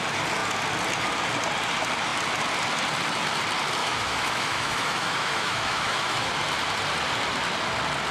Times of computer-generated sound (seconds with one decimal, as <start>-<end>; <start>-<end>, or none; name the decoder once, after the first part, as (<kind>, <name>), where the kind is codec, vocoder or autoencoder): 3.8-6.3 (autoencoder, DAC-VAE)